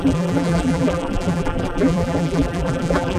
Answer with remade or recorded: remade